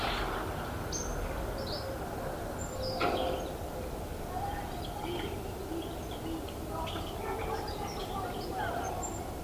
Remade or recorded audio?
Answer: recorded